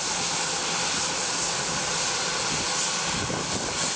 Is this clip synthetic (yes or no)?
no